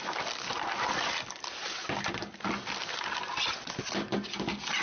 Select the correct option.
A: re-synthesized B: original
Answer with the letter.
B